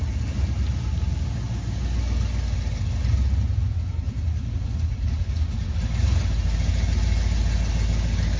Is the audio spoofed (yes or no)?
no